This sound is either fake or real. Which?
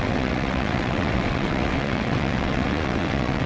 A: fake